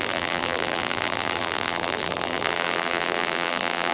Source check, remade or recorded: remade